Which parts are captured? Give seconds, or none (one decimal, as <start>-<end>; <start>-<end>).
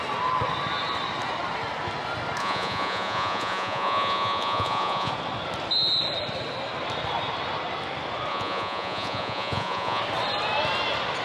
0.0-2.4; 5.1-8.3; 10.0-11.2